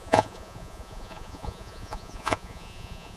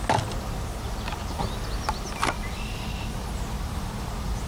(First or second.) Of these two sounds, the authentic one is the second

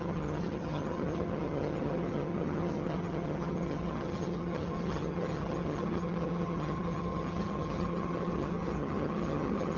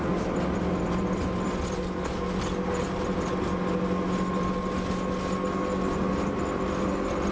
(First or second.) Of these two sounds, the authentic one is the second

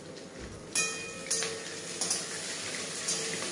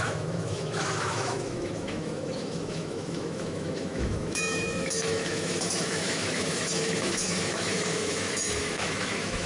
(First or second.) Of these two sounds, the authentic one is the first